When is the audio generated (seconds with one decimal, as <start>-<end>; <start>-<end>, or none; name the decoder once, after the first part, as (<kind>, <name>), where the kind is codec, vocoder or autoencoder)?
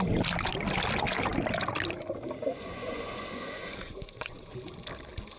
2.4-4.7 (vocoder, Vocos)